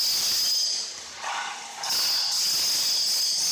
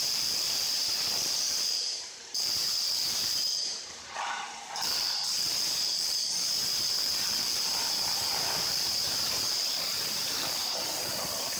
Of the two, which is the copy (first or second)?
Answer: second